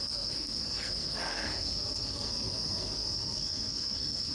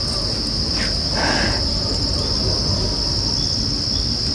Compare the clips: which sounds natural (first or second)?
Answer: second